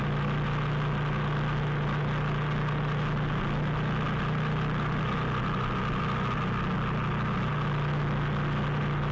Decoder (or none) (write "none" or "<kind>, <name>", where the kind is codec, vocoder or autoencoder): none